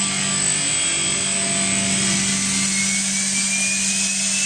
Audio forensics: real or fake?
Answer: real